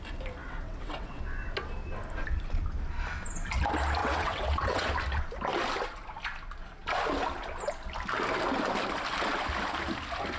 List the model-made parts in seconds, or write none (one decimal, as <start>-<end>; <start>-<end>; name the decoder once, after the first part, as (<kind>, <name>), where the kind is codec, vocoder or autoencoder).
0.4-1.2 (vocoder, WaveNeXt); 4.0-4.9